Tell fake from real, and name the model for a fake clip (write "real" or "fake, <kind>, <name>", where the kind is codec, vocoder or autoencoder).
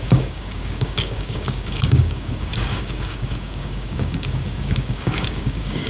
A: fake, codec, DAC